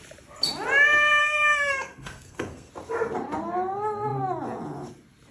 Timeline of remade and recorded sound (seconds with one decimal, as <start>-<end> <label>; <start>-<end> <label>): 0.0-1.2 recorded; 1.2-2.7 remade; 2.7-5.3 recorded